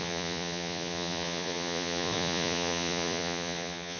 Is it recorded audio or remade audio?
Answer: remade